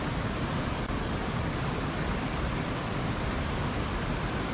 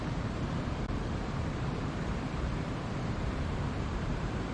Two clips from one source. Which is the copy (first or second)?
second